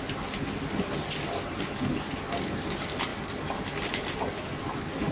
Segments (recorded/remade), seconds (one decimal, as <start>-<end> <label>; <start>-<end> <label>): 0.0-5.1 recorded